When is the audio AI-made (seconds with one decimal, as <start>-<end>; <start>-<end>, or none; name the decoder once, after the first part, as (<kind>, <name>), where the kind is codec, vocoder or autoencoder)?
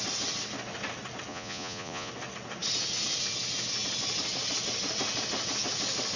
1.3-2.1 (vocoder, Vocos)